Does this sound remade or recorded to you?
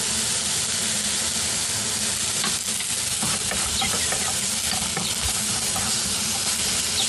recorded